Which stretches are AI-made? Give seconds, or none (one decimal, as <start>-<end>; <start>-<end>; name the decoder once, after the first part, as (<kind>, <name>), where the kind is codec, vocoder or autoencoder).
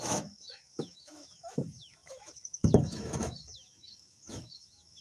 0.0-5.0 (autoencoder, DAC-VAE)